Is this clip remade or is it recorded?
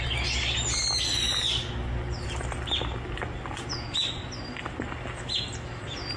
recorded